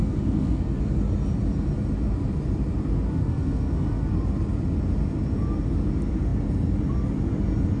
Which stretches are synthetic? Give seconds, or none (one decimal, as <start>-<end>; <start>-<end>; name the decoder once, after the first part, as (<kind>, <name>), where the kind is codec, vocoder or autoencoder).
0.0-0.8 (codec, SNAC); 3.2-4.0